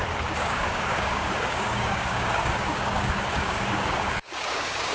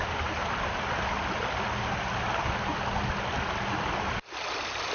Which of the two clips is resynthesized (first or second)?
first